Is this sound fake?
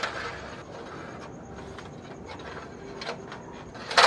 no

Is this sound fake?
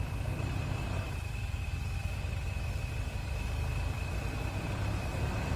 yes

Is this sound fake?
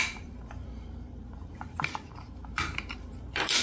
yes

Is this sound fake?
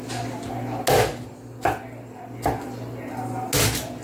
no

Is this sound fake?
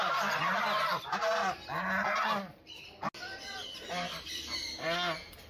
no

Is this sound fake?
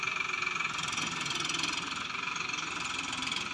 yes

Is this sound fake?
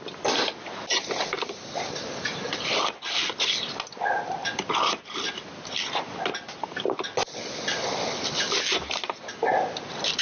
no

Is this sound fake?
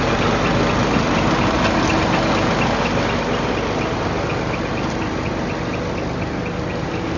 no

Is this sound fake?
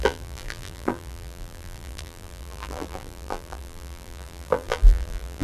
yes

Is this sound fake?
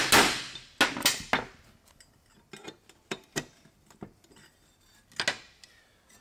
no